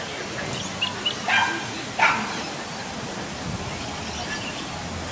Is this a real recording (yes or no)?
yes